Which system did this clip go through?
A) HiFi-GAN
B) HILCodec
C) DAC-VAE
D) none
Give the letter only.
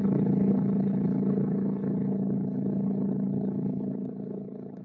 B